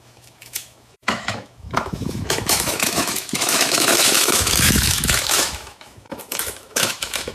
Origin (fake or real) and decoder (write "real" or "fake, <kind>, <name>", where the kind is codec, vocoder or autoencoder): fake, autoencoder, DAC-VAE